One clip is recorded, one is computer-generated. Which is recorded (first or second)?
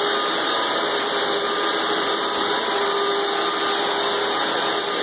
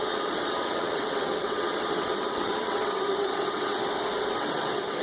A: first